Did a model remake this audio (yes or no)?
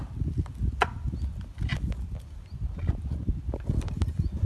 no